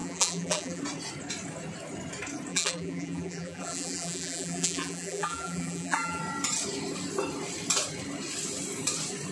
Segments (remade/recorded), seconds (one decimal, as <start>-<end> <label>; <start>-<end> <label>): 0.0-0.8 remade; 0.8-2.5 recorded; 2.5-6.2 remade; 6.2-9.3 recorded